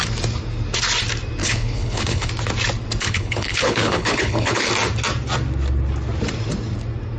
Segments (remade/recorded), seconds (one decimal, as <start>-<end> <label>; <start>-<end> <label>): 0.0-1.4 recorded; 1.4-2.3 remade; 2.3-3.0 recorded; 3.0-4.7 remade; 4.7-7.2 recorded